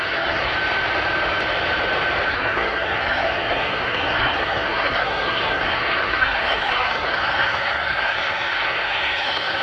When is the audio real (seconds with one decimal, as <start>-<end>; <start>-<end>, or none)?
0.5-2.3